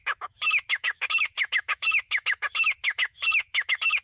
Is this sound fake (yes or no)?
yes